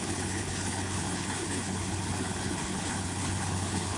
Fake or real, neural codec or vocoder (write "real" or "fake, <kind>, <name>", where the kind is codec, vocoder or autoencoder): fake, codec, HILCodec